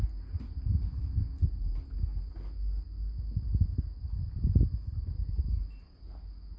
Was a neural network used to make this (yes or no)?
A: no